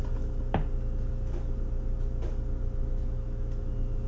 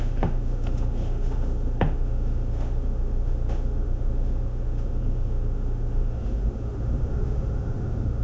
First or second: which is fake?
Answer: second